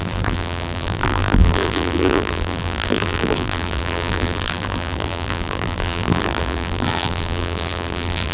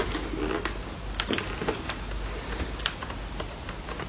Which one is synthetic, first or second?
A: first